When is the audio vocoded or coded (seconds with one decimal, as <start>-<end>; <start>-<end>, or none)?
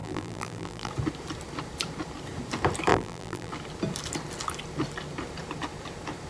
0.0-0.9; 2.9-3.5